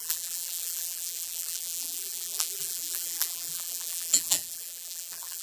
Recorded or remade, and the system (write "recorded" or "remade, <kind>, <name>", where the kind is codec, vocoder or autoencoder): remade, vocoder, BigVGAN v2